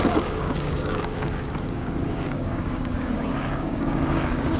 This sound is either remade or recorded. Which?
remade